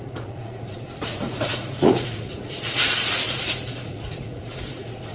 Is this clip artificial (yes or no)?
yes